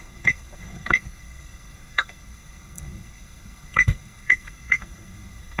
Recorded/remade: remade